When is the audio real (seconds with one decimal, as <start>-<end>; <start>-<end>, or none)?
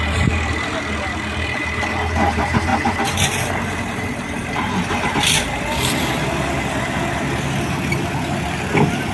0.0-9.1